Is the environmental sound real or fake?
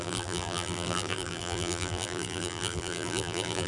fake